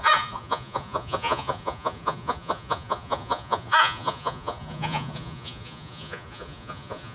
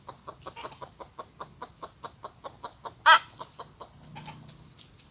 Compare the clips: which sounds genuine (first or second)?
second